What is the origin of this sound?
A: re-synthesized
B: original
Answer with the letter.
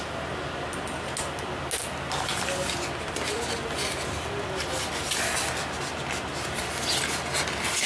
B